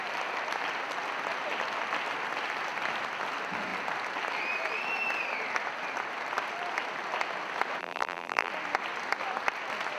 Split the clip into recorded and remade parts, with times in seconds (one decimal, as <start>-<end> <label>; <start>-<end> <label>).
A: 0.0-7.8 recorded; 7.8-8.5 remade; 8.5-10.0 recorded